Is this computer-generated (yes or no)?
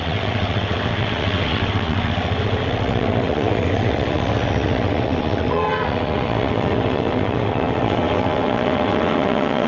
yes